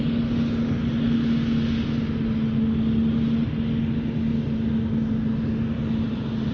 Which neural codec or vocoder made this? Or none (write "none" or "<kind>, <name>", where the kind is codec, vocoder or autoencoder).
none